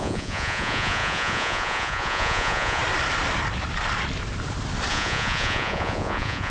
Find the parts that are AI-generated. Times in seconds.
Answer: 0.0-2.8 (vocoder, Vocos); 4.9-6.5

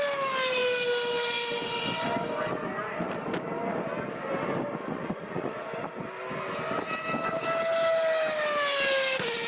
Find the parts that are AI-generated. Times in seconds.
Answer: 4.9-5.6 (vocoder, Vocos)

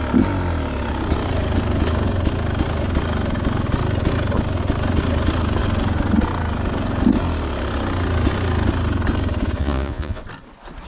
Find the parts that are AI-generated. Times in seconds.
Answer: 9.6-10.2 (vocoder, Vocos)